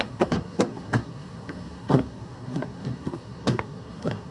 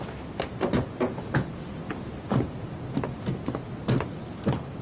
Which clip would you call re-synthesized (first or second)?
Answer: first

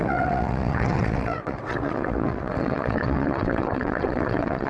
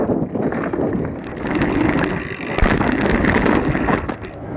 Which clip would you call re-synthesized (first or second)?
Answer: first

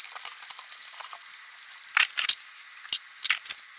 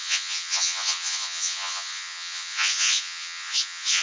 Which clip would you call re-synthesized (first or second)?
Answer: second